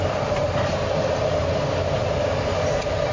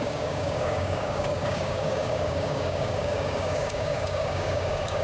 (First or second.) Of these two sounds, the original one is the first